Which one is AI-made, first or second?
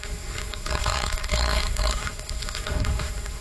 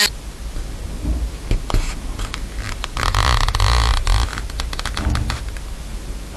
first